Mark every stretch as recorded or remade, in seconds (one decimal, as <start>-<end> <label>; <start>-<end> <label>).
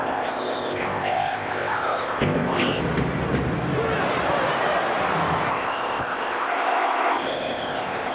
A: 0.0-2.8 remade; 2.8-5.5 recorded; 5.5-8.1 remade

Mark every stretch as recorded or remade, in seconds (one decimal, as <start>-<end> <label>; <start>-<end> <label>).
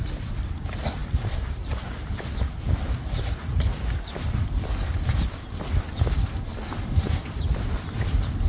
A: 0.0-8.5 recorded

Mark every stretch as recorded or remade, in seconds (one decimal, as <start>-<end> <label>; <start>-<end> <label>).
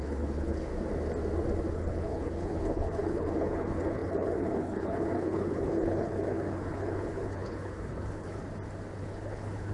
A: 0.0-0.7 remade; 0.7-1.7 recorded; 1.7-8.4 remade; 8.4-9.0 recorded; 9.0-9.7 remade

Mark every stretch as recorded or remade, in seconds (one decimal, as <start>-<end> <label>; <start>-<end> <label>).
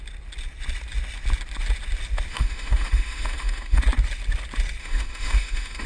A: 0.0-2.3 recorded; 2.3-3.8 remade; 3.8-4.8 recorded; 4.8-5.9 remade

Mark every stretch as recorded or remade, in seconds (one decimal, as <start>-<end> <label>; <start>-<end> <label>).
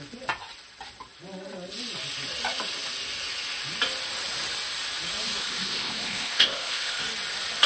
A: 0.0-5.4 recorded; 5.4-7.0 remade; 7.0-7.7 recorded